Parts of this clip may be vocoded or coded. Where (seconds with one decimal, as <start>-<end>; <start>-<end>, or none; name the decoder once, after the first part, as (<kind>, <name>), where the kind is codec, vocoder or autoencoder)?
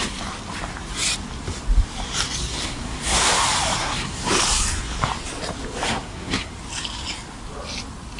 2.5-3.3 (codec, SNAC); 3.8-4.3; 5.9-6.5